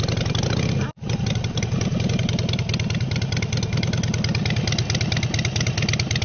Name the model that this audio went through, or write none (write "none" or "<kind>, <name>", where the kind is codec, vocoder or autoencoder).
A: none